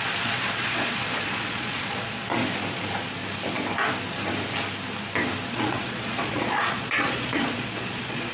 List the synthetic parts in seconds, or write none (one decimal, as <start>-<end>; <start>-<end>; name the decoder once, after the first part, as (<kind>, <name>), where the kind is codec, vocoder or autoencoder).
0.0-2.4 (vocoder, Vocos); 5.5-8.3